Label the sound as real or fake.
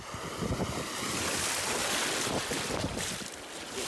real